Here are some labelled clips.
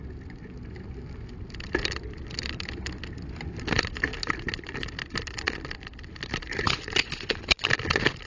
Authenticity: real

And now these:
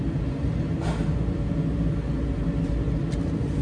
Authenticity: real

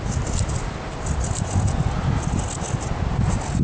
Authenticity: real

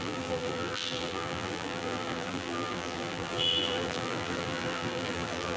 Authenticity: fake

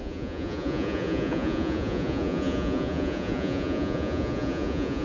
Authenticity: fake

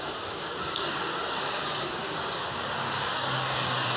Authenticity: fake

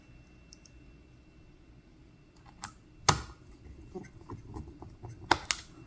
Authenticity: real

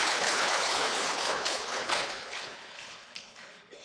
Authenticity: fake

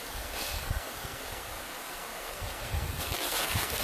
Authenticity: fake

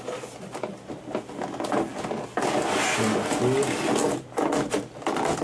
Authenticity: real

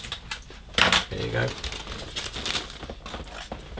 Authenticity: real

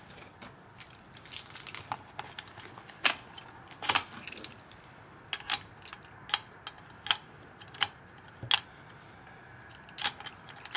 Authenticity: real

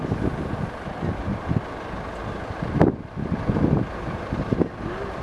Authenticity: real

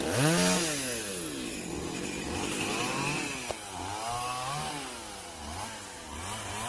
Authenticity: real